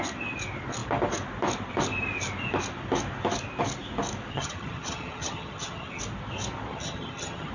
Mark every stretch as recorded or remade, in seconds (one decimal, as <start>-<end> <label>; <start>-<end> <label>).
0.0-4.3 recorded; 4.3-6.0 remade; 6.0-6.7 recorded; 6.7-7.5 remade